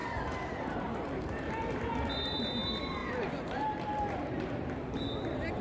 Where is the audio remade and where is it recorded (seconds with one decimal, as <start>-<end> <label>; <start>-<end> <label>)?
0.0-1.4 remade; 1.4-3.0 recorded; 3.0-4.7 remade; 4.7-5.6 recorded